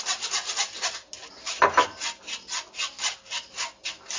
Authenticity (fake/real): real